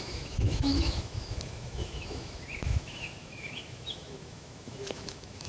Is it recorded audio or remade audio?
remade